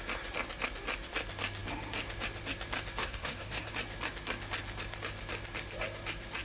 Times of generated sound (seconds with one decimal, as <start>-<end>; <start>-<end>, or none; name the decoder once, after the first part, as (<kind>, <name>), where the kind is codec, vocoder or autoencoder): 3.0-3.7 (codec, SNAC)